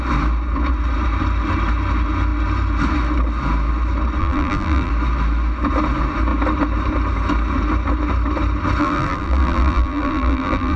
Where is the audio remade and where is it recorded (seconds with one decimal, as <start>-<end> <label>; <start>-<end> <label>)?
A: 0.0-4.2 recorded; 4.2-4.9 remade; 4.9-8.8 recorded; 8.8-10.8 remade